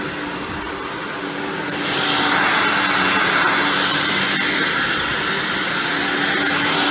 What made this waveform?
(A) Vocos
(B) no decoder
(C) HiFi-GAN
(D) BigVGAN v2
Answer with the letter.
B